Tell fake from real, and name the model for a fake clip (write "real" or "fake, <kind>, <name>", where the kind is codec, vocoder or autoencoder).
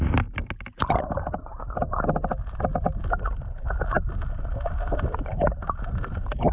real